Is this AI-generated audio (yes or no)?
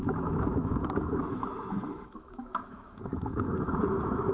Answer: yes